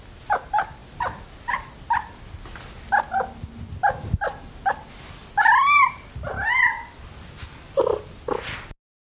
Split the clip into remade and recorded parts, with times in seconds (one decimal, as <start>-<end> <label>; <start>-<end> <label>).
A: 0.0-9.0 recorded